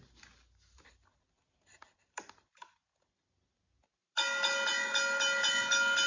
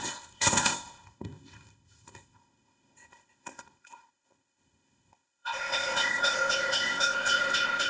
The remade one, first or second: second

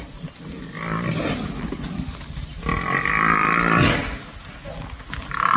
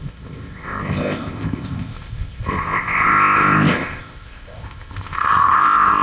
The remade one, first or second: second